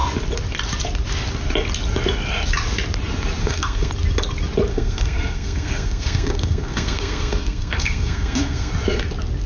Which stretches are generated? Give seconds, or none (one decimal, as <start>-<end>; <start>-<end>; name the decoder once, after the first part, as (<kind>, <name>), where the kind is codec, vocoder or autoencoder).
3.4-3.9 (codec, SNAC); 4.7-8.7